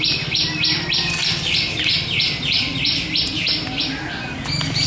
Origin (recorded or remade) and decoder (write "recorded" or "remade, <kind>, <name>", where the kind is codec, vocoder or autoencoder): recorded